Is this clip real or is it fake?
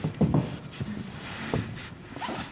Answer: real